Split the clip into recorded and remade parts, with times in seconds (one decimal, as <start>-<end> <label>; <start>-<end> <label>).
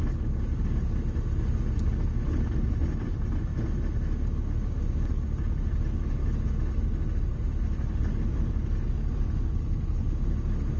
0.0-10.8 recorded